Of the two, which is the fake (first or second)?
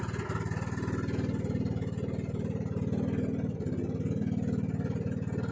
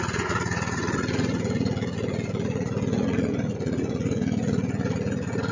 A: second